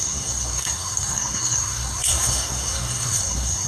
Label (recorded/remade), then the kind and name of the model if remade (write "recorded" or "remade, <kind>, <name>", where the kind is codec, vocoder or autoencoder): remade, codec, SNAC